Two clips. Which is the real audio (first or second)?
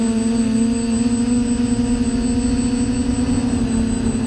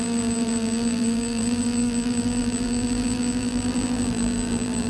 first